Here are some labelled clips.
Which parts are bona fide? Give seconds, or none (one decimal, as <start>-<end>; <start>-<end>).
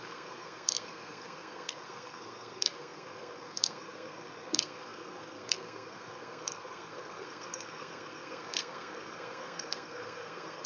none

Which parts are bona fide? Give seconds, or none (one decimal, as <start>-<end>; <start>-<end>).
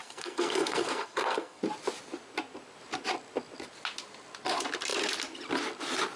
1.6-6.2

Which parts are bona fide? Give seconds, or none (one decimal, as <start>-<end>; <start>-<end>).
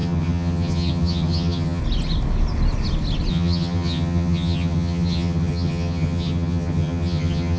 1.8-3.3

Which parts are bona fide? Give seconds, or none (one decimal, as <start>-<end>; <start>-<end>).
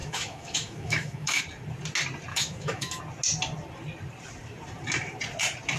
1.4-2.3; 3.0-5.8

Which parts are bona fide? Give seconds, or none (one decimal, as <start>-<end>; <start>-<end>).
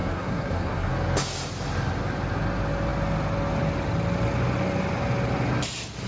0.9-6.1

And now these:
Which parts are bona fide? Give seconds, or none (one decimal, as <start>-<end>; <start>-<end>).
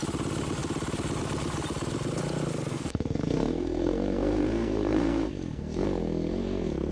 0.0-2.7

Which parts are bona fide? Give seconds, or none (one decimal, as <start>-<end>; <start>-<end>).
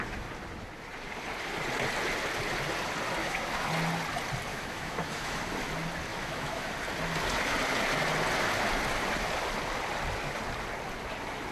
0.0-3.2; 3.7-4.5; 5.4-6.1; 6.7-11.5